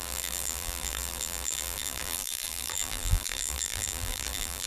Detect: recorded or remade remade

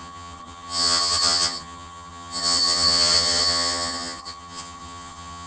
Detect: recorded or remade remade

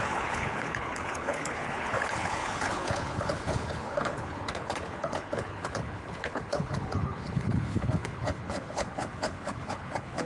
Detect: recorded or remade remade